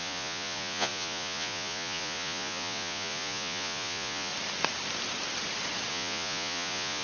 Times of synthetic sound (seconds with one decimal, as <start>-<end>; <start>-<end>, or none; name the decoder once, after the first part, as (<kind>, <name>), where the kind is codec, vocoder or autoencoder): 0.0-4.3 (vocoder, Vocos); 5.9-7.0